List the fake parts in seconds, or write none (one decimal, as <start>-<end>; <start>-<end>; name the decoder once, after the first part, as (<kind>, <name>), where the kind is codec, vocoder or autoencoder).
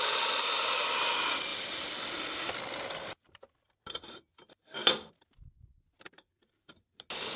none